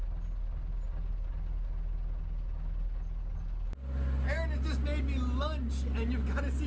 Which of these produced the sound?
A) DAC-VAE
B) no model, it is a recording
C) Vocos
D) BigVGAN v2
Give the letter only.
B